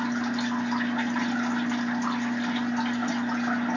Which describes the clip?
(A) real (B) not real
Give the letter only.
A